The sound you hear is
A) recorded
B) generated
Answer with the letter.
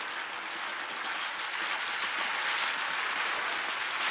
A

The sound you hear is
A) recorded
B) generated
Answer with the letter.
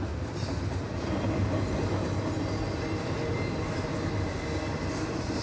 A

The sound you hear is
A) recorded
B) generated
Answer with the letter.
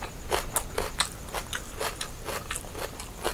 A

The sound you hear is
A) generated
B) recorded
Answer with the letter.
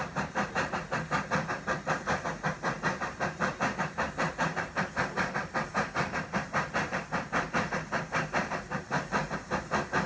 A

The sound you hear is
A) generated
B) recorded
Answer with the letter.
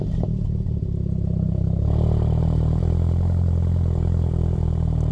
A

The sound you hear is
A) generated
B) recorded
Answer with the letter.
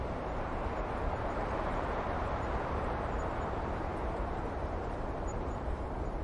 A